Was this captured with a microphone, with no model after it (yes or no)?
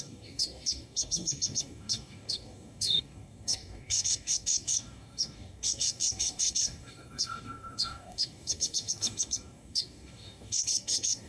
no